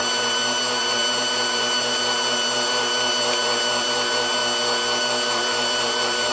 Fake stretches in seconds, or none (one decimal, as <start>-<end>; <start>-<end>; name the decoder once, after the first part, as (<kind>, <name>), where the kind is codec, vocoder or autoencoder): 0.0-4.4 (vocoder, BigVGAN v2); 5.0-6.3